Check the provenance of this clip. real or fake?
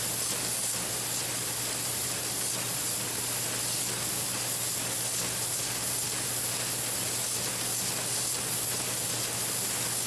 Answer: real